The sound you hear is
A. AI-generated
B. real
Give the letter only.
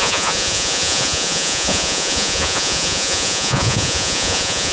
A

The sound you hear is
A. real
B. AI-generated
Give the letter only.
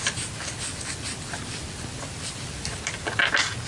A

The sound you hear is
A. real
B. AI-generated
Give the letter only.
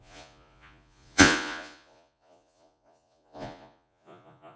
B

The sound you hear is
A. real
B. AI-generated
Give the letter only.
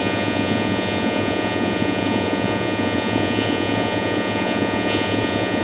B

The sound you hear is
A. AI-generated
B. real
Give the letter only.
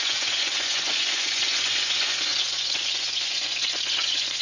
A